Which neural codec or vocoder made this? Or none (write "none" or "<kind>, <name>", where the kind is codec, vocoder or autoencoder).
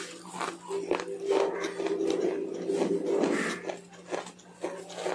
none